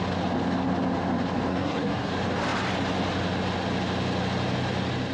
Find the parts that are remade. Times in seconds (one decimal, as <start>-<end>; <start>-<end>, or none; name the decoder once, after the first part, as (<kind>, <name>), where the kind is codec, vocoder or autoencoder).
1.5-2.1 (codec, SNAC)